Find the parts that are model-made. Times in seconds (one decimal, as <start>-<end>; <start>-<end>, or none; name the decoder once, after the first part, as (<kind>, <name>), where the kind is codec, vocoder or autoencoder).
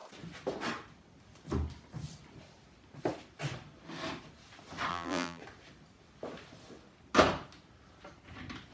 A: 4.9-5.4 (vocoder, BigVGAN v2)